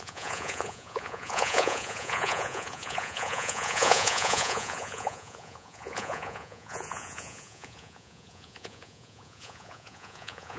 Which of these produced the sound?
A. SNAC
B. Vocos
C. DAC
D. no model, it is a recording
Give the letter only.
B